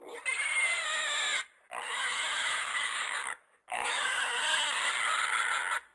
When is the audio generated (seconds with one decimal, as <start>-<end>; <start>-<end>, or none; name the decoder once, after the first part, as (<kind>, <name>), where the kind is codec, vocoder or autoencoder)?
2.7-4.2 (codec, DAC)